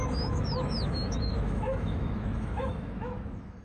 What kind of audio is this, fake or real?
fake